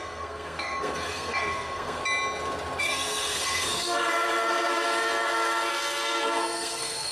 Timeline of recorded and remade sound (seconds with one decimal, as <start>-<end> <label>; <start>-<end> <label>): 0.0-2.0 remade; 2.0-2.8 recorded; 2.8-7.1 remade